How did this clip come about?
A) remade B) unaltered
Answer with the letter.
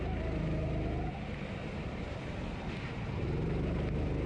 B